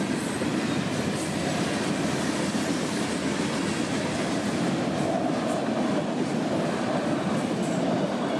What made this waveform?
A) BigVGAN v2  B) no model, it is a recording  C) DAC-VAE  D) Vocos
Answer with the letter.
B